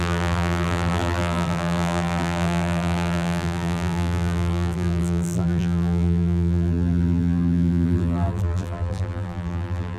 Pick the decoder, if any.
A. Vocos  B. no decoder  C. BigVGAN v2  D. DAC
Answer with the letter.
C